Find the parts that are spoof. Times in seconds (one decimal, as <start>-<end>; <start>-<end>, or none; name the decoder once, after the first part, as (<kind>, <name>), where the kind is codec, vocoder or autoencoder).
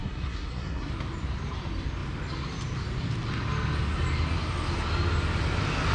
0.0-0.9 (codec, SNAC)